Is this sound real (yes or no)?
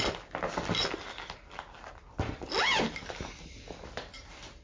yes